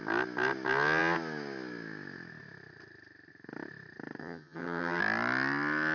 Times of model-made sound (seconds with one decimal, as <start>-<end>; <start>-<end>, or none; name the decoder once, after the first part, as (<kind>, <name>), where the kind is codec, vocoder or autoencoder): 4.2-5.0 (vocoder, HiFi-GAN)